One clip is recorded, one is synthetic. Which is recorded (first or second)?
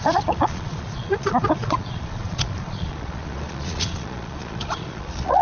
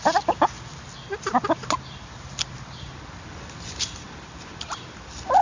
second